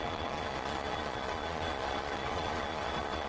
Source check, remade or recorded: remade